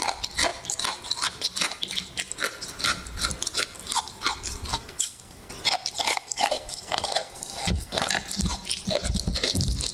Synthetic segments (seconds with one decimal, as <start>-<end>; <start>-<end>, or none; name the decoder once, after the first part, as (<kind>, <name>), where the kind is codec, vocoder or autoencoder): 4.7-5.5 (codec, SNAC); 6.1-8.1